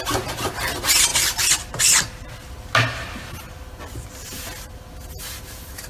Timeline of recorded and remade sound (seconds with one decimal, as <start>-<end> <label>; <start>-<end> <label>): 0.0-5.9 recorded